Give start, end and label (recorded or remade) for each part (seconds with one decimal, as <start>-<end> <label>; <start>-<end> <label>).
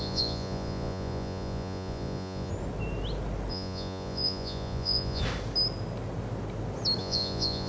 0.0-2.5 remade; 2.5-3.5 recorded; 3.5-5.2 remade; 5.2-7.0 recorded; 7.0-7.7 remade